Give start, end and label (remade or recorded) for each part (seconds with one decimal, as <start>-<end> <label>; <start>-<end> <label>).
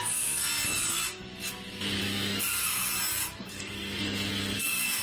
0.0-0.5 remade; 0.5-2.0 recorded; 2.0-2.9 remade; 2.9-3.4 recorded; 3.4-5.0 remade